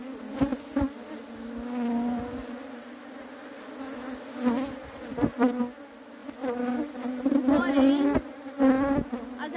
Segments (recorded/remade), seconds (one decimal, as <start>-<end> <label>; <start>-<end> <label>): 0.0-6.2 recorded; 6.2-8.6 remade; 8.6-9.6 recorded